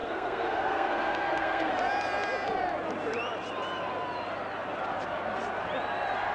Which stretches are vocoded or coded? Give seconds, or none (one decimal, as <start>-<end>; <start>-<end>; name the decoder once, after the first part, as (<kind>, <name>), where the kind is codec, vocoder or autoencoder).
0.0-1.7 (codec, SNAC)